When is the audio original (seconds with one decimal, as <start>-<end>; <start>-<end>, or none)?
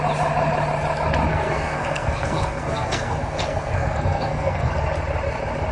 0.0-1.3; 4.7-5.7